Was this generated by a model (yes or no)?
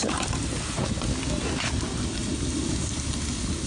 no